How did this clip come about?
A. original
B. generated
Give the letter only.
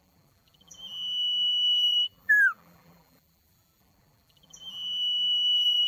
B